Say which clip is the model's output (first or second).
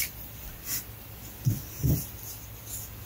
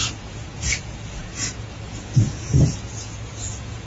second